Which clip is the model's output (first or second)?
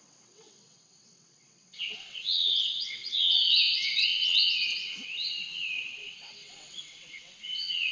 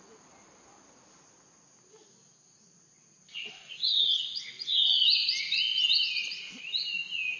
first